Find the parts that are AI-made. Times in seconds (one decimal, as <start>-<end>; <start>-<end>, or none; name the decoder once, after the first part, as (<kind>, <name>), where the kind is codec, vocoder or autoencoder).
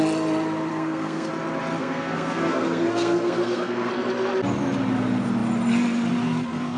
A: 0.7-1.3 (codec, SNAC); 1.8-3.9